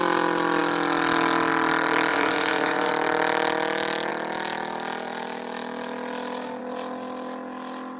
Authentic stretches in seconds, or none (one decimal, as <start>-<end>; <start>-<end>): 0.0-2.1; 2.9-8.0